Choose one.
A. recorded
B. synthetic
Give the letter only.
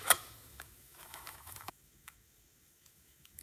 B